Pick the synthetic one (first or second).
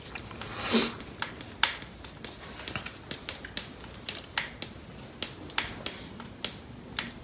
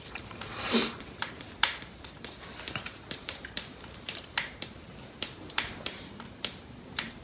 second